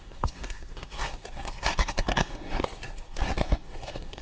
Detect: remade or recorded remade